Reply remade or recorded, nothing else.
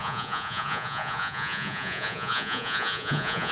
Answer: remade